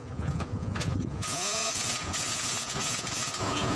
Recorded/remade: remade